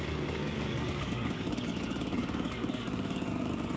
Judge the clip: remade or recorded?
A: remade